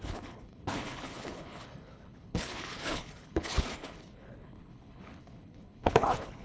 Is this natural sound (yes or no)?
no